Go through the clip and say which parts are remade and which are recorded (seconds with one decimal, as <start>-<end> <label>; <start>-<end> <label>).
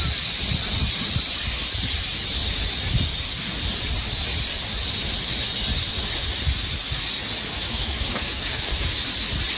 0.0-7.5 recorded; 7.5-8.9 remade; 8.9-9.6 recorded